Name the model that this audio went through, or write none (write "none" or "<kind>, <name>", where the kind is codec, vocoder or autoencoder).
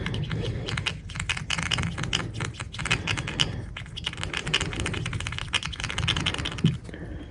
none